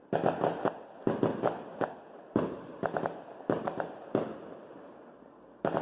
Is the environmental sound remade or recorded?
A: recorded